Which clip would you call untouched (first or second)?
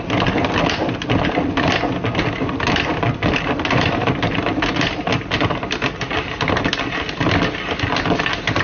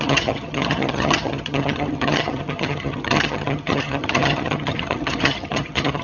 first